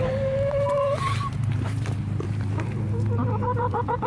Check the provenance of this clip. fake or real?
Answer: fake